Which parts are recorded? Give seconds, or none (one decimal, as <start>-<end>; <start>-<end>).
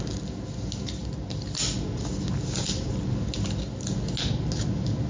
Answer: 0.0-5.1